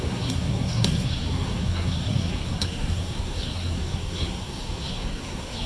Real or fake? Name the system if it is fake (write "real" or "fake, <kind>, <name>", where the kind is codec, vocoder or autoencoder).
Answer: fake, codec, SNAC